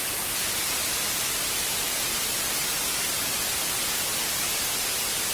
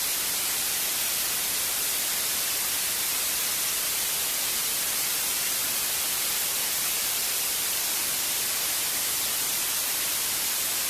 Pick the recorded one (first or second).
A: first